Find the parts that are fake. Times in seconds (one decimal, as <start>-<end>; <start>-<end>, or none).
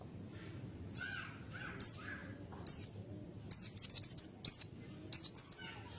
none